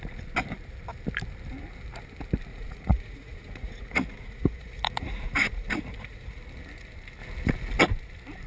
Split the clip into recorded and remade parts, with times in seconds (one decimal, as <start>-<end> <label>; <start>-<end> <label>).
0.0-2.5 recorded; 2.5-6.4 remade; 6.4-8.5 recorded